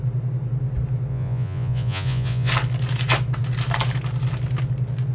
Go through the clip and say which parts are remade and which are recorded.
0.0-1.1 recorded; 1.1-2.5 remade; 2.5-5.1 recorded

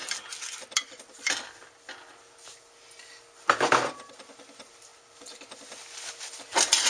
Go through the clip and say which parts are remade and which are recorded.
0.0-6.9 recorded

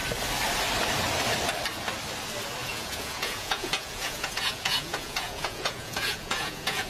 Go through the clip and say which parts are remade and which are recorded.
0.0-2.6 recorded; 2.6-6.9 remade

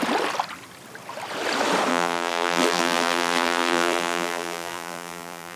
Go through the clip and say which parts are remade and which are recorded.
0.0-1.9 recorded; 1.9-5.6 remade

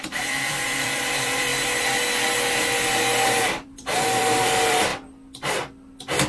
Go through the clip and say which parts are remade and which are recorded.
0.0-1.5 remade; 1.5-3.4 recorded; 3.4-4.9 remade; 4.9-6.3 recorded

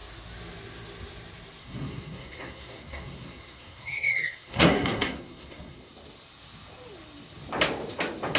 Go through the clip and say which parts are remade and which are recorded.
0.0-1.6 recorded; 1.6-5.9 remade; 5.9-8.4 recorded